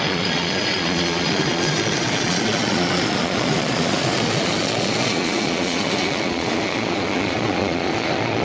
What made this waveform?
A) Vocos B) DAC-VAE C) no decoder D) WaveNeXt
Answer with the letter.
A